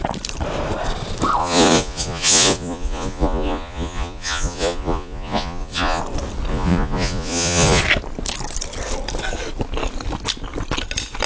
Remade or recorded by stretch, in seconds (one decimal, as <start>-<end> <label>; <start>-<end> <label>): 0.0-1.4 recorded; 1.4-6.0 remade; 6.0-6.5 recorded; 6.5-7.8 remade; 7.8-11.3 recorded